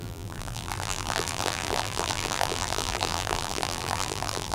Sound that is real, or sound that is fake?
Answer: fake